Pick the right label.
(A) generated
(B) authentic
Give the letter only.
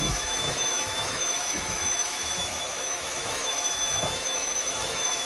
A